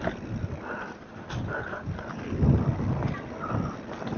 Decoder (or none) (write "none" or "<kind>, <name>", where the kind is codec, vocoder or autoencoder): none